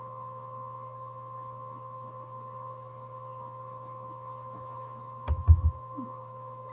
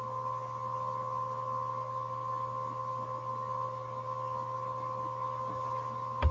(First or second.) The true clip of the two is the second